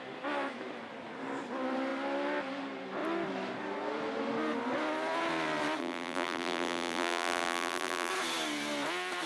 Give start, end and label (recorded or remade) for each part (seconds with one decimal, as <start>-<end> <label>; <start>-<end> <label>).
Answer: 0.0-5.8 recorded; 5.8-8.1 remade; 8.1-9.3 recorded